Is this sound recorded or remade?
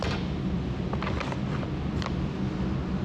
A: recorded